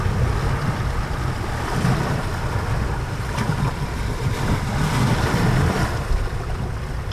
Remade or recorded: remade